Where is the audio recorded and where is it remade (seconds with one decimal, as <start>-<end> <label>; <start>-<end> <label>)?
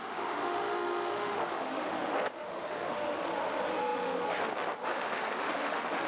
0.0-6.1 remade